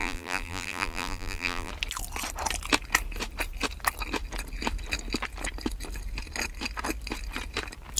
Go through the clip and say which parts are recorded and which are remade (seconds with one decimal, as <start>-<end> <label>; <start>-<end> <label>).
0.0-1.7 remade; 1.7-8.0 recorded